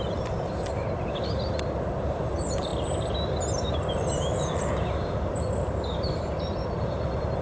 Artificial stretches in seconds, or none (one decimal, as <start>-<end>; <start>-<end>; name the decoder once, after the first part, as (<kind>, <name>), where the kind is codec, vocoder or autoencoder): 0.0-2.7 (vocoder, BigVGAN v2); 3.3-7.4